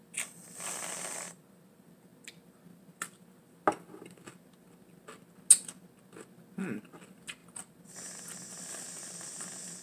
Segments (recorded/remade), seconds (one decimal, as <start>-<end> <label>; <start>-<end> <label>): 0.0-9.8 recorded